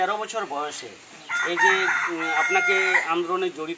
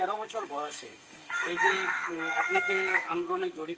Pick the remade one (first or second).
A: second